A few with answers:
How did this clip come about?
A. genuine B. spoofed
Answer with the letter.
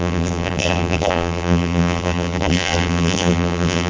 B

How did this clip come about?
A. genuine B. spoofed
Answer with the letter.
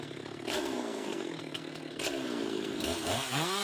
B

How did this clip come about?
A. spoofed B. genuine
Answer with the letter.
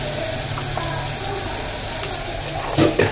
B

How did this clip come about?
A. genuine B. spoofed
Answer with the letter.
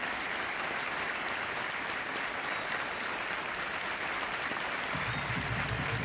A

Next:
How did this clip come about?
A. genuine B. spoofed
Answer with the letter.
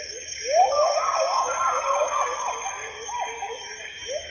B